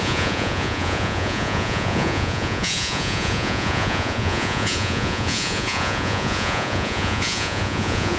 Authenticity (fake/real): fake